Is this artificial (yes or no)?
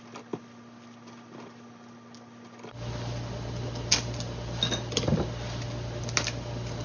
no